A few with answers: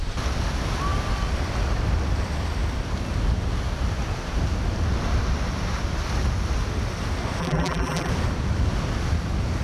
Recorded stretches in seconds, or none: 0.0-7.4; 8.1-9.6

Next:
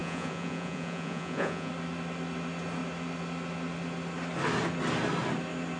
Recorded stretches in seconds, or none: 1.7-5.8

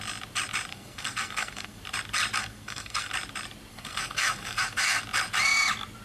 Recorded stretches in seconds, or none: 0.0-0.7; 1.8-2.4; 3.1-3.7; 5.0-6.0

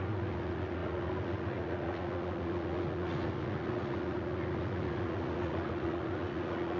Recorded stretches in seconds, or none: none

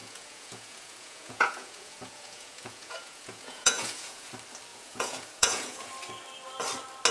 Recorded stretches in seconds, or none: 4.3-4.7; 5.9-7.1